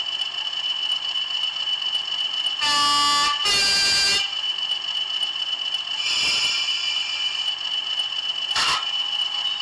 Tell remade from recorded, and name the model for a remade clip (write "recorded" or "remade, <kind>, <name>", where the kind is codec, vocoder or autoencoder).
recorded